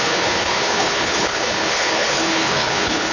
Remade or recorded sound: remade